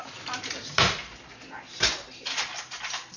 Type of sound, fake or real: real